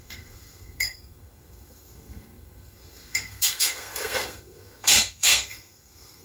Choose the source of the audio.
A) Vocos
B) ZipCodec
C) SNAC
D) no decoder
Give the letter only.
C